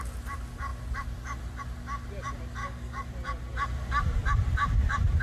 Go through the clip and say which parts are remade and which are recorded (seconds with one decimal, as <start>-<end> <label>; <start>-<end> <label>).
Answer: 0.0-2.6 recorded; 2.6-3.1 remade; 3.1-5.2 recorded